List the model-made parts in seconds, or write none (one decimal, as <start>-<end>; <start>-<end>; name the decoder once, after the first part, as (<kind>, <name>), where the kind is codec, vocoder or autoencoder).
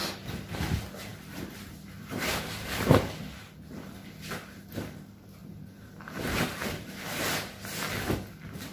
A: 1.1-3.2 (vocoder, BigVGAN v2); 5.4-6.9